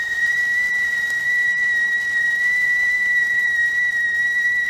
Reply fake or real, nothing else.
fake